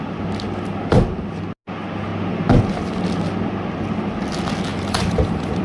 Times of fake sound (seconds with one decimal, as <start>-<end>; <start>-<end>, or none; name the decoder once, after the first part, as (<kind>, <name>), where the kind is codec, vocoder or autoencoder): 4.7-5.6 (vocoder, BigVGAN v2)